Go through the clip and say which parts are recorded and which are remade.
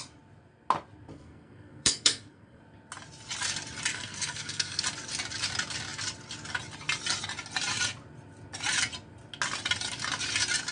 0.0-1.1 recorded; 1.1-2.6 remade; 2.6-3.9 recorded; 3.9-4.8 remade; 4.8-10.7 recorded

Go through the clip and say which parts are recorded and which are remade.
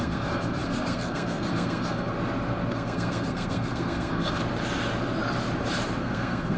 0.0-2.1 remade; 2.1-2.7 recorded; 2.7-4.4 remade; 4.4-6.0 recorded; 6.0-6.6 remade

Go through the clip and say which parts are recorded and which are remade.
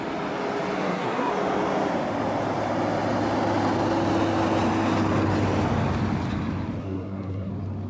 0.0-0.8 recorded; 0.8-1.3 remade; 1.3-6.8 recorded; 6.8-7.5 remade; 7.5-7.9 recorded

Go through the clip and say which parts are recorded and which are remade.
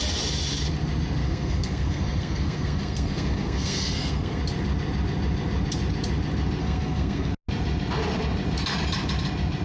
0.0-1.2 recorded; 1.2-4.4 remade; 4.4-6.6 recorded; 6.6-7.3 remade; 7.3-9.6 recorded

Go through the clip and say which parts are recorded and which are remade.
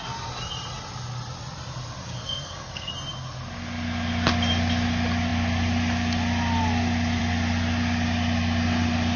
0.0-2.0 recorded; 2.0-2.9 remade; 2.9-9.2 recorded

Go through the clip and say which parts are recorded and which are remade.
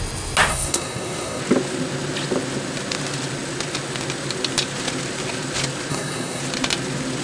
0.0-0.5 recorded; 0.5-1.4 remade; 1.4-5.9 recorded; 5.9-6.4 remade; 6.4-7.2 recorded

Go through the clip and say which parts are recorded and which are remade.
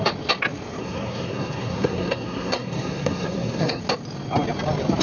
0.0-0.8 recorded; 0.8-3.8 remade; 3.8-5.0 recorded